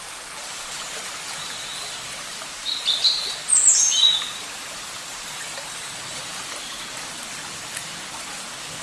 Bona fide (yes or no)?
no